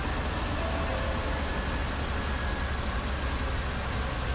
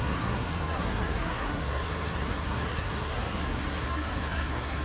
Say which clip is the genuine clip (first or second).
first